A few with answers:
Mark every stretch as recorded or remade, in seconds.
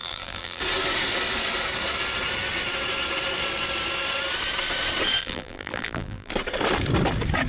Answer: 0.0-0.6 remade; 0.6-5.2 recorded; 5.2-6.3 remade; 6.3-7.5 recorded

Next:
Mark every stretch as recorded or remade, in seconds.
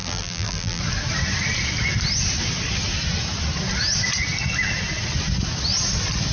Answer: 0.0-0.8 remade; 0.8-6.3 recorded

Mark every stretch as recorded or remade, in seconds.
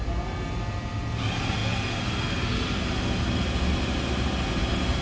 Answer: 0.0-5.0 recorded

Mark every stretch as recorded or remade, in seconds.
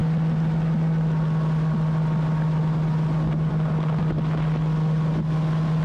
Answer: 0.0-5.8 recorded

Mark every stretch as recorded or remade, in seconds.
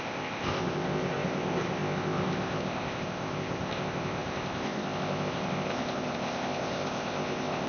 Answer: 0.0-7.7 remade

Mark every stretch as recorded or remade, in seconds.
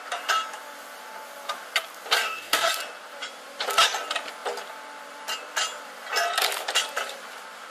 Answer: 0.0-2.2 recorded; 2.2-2.7 remade; 2.7-7.7 recorded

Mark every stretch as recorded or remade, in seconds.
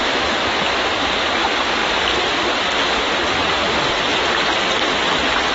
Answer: 0.0-5.5 recorded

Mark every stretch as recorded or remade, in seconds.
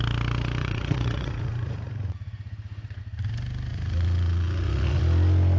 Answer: 0.0-0.6 recorded; 0.6-3.0 remade; 3.0-3.7 recorded; 3.7-5.0 remade; 5.0-5.6 recorded